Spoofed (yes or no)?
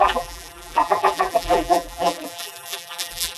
yes